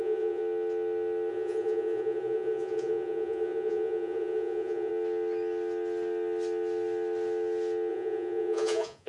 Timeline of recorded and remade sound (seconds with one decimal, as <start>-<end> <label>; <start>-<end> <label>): 0.0-0.4 remade; 0.4-1.3 recorded; 1.3-4.9 remade; 4.9-7.9 recorded; 7.9-9.1 remade

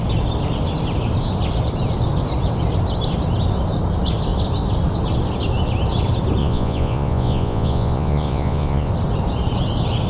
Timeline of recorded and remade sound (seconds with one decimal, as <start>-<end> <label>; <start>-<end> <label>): 0.0-6.4 recorded; 6.4-8.9 remade; 8.9-10.1 recorded

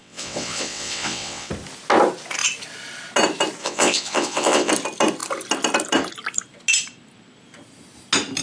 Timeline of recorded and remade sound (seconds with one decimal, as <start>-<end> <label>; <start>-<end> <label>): 0.0-1.5 remade; 1.5-3.6 recorded; 3.6-4.7 remade; 4.7-8.4 recorded

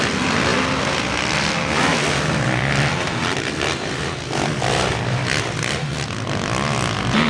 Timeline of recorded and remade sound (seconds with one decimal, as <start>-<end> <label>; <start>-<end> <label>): 0.0-7.3 recorded